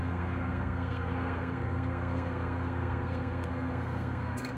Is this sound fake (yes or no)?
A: yes